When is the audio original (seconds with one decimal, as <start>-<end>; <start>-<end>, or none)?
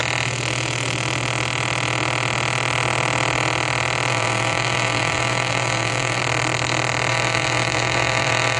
0.0-4.1; 6.2-7.1